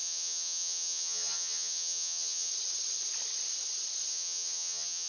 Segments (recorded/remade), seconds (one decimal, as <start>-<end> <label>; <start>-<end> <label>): 0.0-2.5 remade; 2.5-4.1 recorded; 4.1-5.1 remade